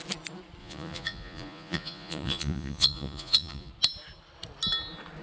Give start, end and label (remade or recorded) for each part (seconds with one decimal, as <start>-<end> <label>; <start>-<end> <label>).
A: 0.0-0.6 recorded; 0.6-3.7 remade; 3.7-5.2 recorded